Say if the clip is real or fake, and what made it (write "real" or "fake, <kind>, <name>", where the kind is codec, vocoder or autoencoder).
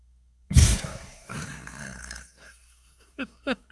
fake, codec, SNAC